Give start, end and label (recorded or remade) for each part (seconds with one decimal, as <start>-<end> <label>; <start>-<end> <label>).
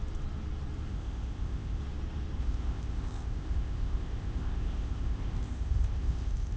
0.0-0.9 recorded; 0.9-1.8 remade; 1.8-2.4 recorded; 2.4-6.6 remade